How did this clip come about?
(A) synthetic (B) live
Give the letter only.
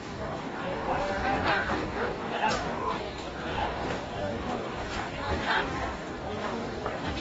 A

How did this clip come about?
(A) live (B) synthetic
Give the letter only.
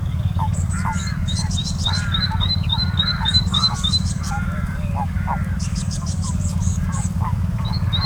B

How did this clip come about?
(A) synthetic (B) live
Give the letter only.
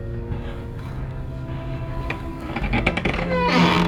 A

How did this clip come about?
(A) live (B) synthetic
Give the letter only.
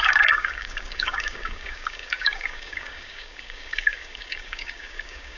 B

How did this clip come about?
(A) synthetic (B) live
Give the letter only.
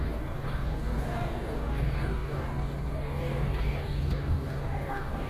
A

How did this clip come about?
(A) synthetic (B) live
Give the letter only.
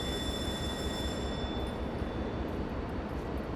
B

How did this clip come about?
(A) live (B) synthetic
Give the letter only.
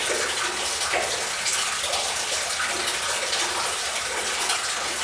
A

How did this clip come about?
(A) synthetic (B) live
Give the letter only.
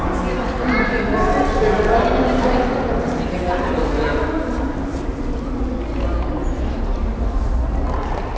B